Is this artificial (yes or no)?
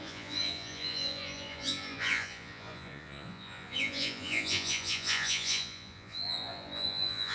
yes